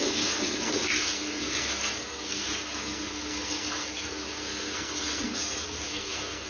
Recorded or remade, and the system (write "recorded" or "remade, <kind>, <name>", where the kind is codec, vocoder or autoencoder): remade, codec, SNAC